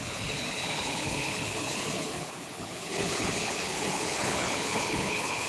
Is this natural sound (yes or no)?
no